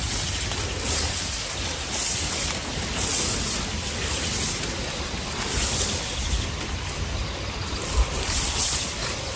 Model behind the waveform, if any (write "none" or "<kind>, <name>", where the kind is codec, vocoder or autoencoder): none